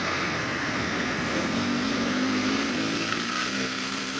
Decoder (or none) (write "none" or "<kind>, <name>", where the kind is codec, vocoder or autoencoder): codec, SNAC